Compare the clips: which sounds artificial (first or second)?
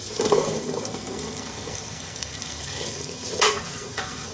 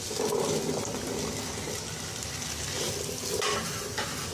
first